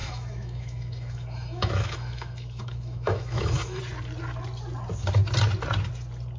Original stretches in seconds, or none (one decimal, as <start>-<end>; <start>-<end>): 3.8-6.4